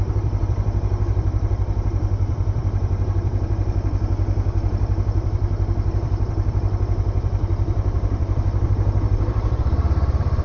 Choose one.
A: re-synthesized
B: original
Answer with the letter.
A